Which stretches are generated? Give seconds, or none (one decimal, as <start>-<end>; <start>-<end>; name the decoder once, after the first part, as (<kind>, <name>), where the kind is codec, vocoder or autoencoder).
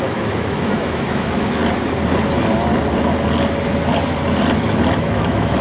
0.0-1.6 (autoencoder, DAC-VAE); 5.0-5.6